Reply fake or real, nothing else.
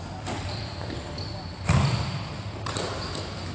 real